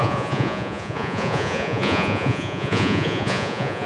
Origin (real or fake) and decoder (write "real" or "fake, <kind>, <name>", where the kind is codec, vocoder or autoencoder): fake, vocoder, Vocos